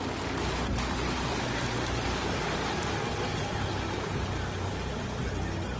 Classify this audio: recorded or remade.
recorded